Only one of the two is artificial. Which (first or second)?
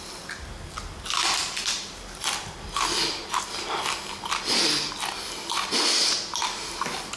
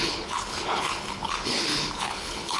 second